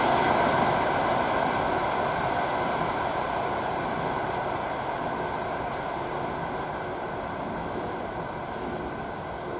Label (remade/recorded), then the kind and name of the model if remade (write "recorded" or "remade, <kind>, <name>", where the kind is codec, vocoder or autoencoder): recorded